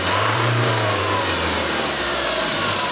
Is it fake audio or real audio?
fake